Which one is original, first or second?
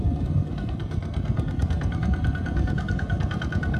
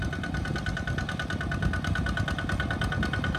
second